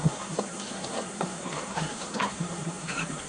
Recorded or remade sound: remade